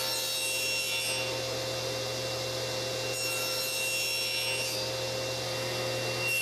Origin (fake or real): real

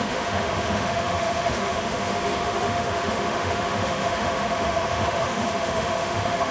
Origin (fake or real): fake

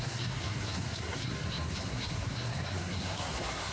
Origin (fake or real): fake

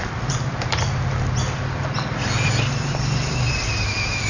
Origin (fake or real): fake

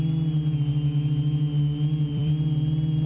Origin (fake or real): fake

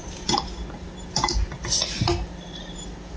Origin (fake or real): real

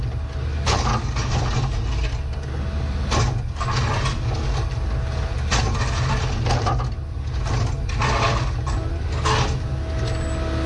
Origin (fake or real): real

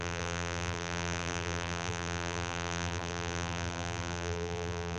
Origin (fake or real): fake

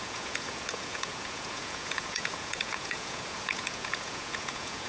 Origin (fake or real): fake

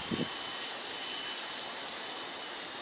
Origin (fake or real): real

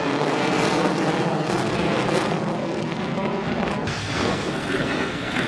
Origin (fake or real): fake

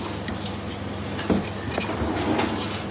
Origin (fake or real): real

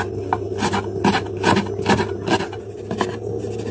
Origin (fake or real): real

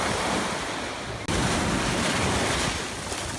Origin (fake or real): real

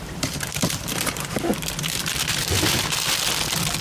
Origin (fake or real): fake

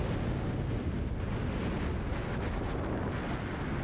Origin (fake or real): real